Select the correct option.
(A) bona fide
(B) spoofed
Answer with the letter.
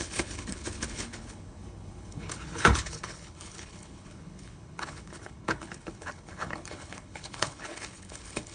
B